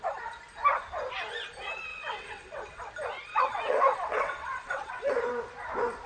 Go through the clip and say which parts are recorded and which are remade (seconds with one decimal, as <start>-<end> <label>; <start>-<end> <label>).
0.0-1.9 recorded; 1.9-2.8 remade; 2.8-3.3 recorded; 3.3-5.1 remade; 5.1-6.1 recorded